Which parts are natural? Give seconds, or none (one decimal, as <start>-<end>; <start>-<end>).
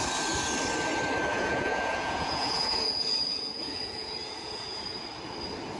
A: 0.0-1.3; 4.8-5.8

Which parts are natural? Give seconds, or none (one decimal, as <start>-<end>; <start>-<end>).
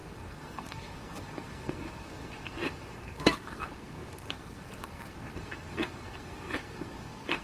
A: none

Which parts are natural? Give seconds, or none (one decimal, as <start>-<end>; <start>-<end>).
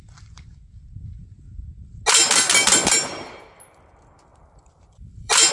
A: 0.0-2.6; 3.4-4.3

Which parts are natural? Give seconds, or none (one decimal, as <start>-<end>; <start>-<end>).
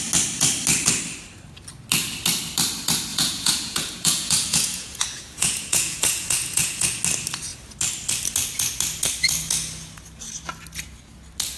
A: 0.0-3.1; 7.0-11.6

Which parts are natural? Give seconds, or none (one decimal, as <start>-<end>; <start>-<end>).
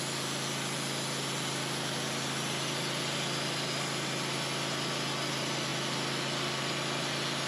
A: 0.0-7.5